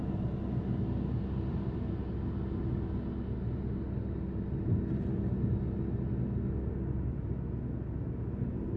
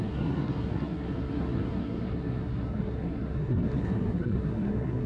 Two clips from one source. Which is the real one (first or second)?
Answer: first